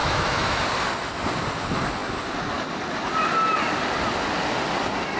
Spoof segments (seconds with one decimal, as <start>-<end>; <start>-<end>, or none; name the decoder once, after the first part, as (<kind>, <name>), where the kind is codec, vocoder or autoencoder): 0.0-0.6 (autoencoder, DAC-VAE)